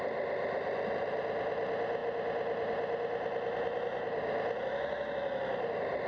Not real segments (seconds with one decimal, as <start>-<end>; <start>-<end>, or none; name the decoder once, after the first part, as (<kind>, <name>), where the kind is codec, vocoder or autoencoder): none